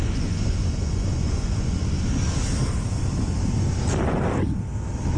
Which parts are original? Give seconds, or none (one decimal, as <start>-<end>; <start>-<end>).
1.8-5.2